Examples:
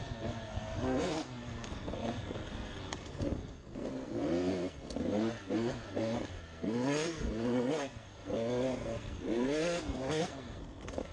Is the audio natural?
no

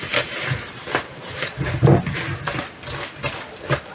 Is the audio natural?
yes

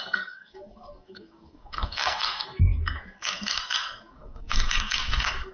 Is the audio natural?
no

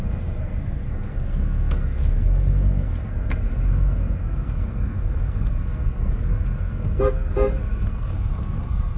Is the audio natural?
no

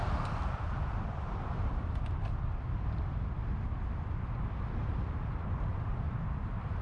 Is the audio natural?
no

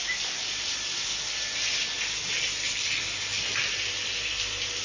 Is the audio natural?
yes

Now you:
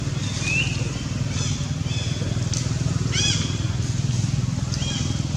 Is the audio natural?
yes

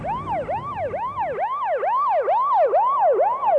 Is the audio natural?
yes